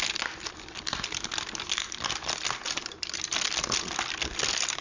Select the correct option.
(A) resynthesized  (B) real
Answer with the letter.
B